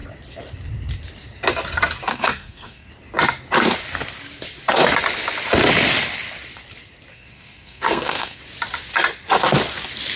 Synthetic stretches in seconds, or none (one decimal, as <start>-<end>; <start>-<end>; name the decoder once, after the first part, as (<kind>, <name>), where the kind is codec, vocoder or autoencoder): 2.1-2.9 (codec, SNAC); 7.1-8.4